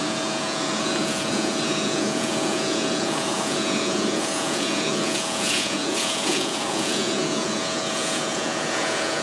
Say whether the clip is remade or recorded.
remade